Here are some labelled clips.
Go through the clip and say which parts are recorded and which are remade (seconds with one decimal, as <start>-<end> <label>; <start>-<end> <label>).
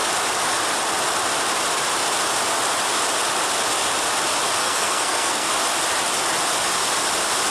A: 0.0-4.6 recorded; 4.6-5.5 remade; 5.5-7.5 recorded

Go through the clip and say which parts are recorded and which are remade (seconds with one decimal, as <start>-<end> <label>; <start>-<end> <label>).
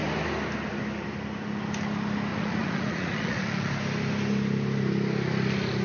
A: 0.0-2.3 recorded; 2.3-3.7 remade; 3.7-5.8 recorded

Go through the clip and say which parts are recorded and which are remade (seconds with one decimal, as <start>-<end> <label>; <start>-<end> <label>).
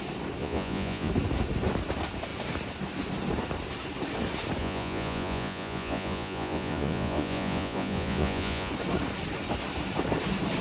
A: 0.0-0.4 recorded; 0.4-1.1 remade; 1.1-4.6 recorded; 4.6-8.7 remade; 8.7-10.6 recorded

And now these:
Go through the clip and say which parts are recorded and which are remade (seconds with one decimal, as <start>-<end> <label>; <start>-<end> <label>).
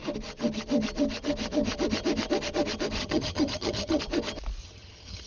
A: 0.0-3.0 recorded; 3.0-4.0 remade; 4.0-4.6 recorded; 4.6-5.3 remade